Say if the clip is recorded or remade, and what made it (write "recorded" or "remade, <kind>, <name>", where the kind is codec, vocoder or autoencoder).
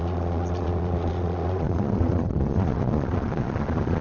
remade, vocoder, Vocos